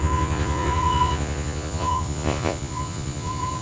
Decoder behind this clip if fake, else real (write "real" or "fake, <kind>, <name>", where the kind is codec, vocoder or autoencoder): fake, vocoder, Vocos